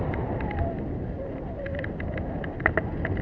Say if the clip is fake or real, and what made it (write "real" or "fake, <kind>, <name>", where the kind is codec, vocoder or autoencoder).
real